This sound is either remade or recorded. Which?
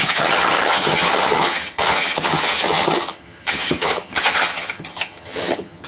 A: remade